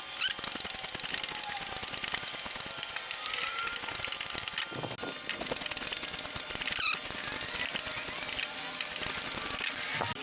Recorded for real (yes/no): yes